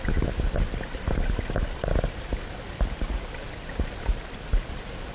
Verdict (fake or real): real